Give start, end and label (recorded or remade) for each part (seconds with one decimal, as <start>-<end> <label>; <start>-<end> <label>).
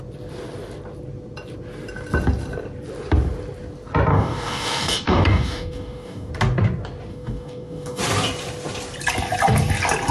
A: 0.0-4.1 recorded; 4.1-6.3 remade; 6.3-7.1 recorded; 7.1-8.0 remade; 8.0-10.1 recorded